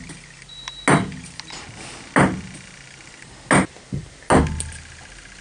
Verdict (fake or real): real